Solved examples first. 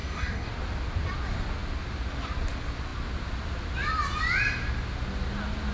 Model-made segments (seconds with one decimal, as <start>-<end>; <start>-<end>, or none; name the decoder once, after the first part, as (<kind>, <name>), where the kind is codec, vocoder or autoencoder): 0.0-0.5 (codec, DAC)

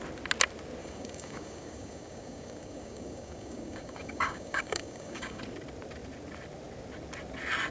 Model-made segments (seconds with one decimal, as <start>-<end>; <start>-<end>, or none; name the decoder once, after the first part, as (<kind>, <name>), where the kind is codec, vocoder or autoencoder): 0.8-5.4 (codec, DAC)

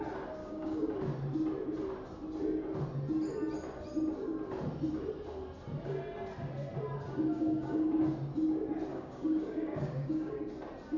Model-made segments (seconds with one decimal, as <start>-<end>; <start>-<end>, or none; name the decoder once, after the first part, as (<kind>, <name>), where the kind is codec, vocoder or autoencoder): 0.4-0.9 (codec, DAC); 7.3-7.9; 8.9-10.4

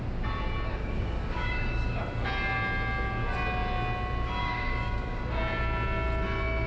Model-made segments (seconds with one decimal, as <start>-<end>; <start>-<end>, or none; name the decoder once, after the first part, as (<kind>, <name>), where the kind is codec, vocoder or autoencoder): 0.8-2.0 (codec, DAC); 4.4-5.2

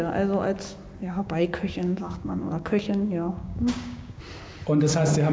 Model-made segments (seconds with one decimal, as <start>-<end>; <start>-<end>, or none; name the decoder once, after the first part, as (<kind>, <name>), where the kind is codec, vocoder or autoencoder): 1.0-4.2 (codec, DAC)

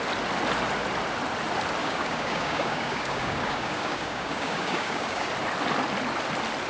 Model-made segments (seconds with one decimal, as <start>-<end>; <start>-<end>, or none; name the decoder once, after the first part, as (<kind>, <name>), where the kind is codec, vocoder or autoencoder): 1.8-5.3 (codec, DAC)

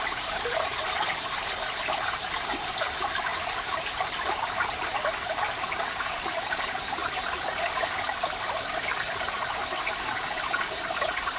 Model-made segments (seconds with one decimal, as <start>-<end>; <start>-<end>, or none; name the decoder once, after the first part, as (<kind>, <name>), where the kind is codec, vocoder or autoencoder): none

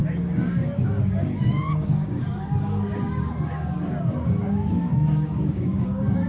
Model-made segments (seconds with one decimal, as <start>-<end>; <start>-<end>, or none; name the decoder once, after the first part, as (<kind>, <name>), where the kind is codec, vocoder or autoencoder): 0.0-6.3 (codec, DAC)